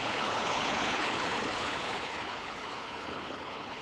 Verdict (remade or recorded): remade